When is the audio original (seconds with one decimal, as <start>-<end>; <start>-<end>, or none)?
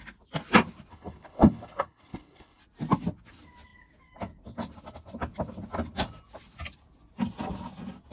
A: 0.0-0.9; 2.6-8.1